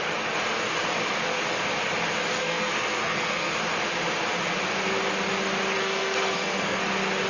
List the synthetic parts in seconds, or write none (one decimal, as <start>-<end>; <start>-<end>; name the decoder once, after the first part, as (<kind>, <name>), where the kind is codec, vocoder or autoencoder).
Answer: 2.4-3.5 (codec, SNAC); 5.8-6.8